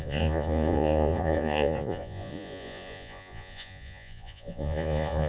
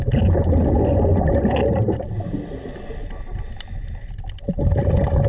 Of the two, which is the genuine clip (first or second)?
second